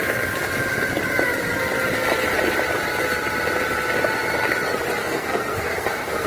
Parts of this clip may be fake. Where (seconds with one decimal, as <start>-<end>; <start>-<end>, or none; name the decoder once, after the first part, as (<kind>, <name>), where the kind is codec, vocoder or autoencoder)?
5.0-6.3 (codec, SNAC)